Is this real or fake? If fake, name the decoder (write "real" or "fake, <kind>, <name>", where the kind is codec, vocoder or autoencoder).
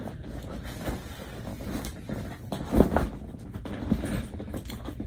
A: real